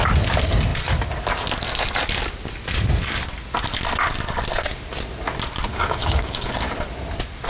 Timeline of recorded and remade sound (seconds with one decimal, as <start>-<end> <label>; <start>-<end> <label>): 0.0-5.7 recorded; 5.7-6.5 remade; 6.5-7.5 recorded